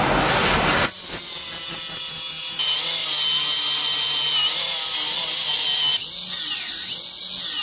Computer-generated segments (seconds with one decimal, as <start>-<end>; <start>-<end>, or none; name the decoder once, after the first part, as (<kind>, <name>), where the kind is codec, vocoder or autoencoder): none